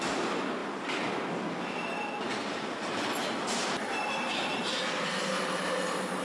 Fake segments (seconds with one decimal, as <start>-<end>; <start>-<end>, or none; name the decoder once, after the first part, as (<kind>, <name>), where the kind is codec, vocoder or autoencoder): none